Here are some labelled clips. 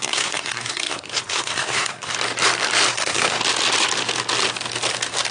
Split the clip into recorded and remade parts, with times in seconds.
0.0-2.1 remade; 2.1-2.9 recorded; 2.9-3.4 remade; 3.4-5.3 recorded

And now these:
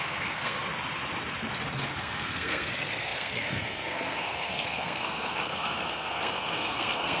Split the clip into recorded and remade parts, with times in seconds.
0.0-0.7 remade; 0.7-2.0 recorded; 2.0-7.2 remade

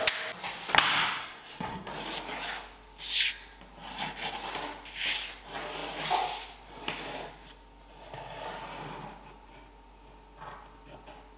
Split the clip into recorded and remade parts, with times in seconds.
0.0-1.2 recorded; 1.2-1.9 remade; 1.9-11.4 recorded